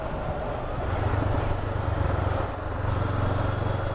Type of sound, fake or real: real